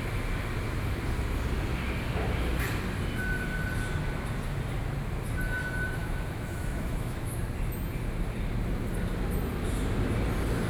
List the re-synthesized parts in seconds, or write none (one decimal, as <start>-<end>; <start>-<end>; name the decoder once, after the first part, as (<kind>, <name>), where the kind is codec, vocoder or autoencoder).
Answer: 6.0-7.4 (autoencoder, DAC-VAE)